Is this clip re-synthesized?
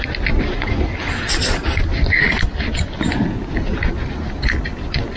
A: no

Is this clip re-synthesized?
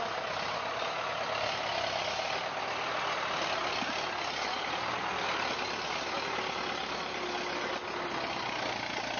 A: no